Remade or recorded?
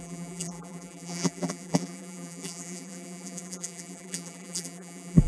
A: remade